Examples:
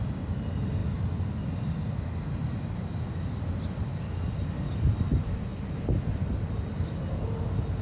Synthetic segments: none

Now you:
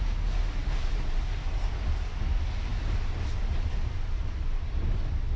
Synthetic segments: none

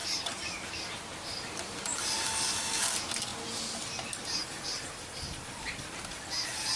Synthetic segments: 0.0-0.7; 1.1-2.6

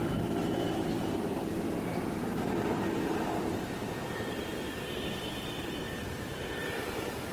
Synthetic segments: 0.0-7.3

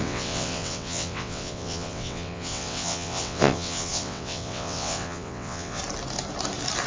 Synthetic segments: 0.0-5.8

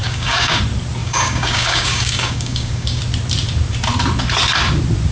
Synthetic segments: 0.0-0.6; 1.0-3.0

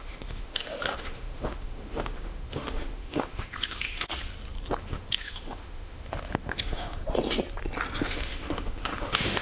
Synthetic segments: 0.0-4.1; 4.8-7.0; 8.0-9.4